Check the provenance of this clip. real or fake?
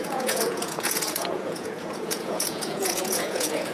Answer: fake